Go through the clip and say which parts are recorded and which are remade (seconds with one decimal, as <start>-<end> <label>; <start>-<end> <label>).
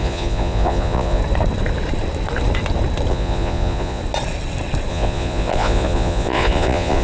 0.0-1.2 remade; 1.2-3.1 recorded; 3.1-4.0 remade; 4.0-4.9 recorded; 4.9-7.0 remade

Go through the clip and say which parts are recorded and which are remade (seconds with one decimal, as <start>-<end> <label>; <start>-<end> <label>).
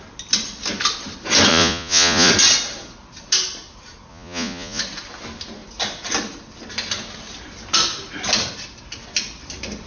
0.0-1.5 recorded; 1.5-2.3 remade; 2.3-4.1 recorded; 4.1-4.8 remade; 4.8-9.9 recorded